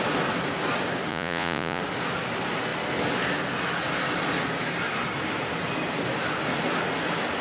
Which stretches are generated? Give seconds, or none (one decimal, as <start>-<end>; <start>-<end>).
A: 1.1-1.8